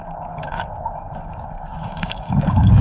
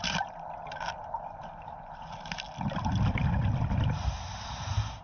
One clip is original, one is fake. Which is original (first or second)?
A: second